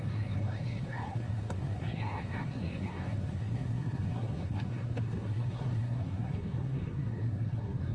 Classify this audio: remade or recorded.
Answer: remade